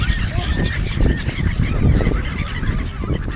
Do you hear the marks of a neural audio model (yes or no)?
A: no